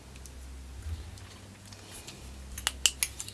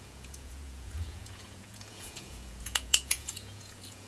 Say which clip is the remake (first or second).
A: second